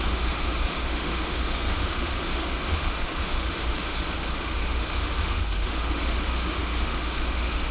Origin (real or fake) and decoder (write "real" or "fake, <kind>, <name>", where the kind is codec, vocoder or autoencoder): fake, autoencoder, DAC-VAE